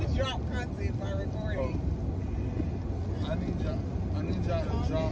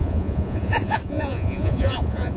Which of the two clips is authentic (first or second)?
first